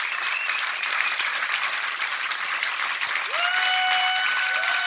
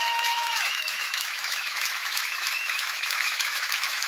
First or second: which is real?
first